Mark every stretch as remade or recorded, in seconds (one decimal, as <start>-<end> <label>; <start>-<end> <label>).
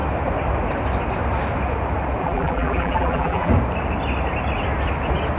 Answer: 0.0-2.2 recorded; 2.2-3.5 remade; 3.5-5.4 recorded